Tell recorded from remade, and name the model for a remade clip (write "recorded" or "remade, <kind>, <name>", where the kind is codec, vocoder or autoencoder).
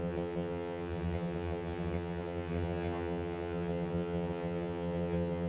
remade, vocoder, HiFi-GAN